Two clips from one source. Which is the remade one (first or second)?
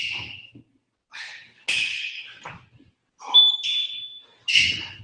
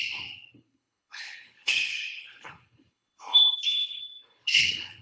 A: second